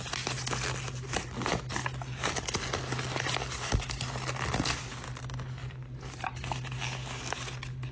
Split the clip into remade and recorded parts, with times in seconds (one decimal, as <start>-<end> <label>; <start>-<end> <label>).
0.0-5.6 recorded; 5.6-6.3 remade; 6.3-7.9 recorded